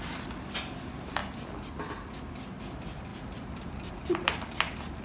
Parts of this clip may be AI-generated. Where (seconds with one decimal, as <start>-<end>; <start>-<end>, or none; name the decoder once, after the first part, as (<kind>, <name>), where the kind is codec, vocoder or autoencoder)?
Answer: none